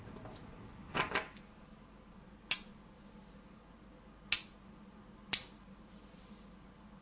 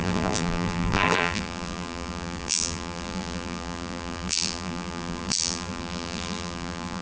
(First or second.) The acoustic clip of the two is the first